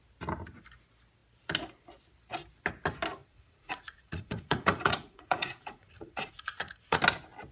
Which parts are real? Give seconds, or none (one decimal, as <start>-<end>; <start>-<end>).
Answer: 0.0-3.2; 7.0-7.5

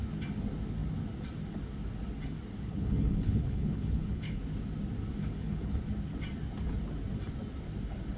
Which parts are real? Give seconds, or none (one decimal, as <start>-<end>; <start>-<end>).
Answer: 0.0-2.7; 4.4-5.2; 5.8-8.2

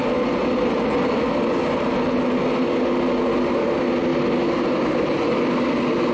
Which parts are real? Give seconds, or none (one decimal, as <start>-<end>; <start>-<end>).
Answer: 0.0-0.4; 1.3-6.1

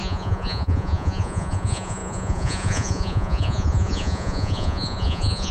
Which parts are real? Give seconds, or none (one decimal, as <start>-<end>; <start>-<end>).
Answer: none

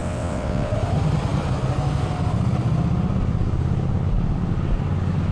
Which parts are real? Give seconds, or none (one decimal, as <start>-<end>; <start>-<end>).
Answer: 0.7-5.3

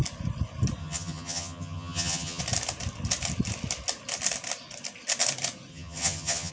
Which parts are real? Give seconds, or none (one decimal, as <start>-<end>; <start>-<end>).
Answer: 0.0-0.8; 2.4-5.7